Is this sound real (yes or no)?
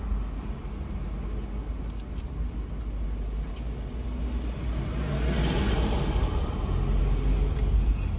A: yes